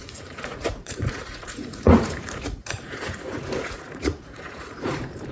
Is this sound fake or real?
fake